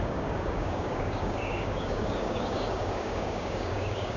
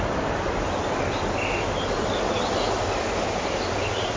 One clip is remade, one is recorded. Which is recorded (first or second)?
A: second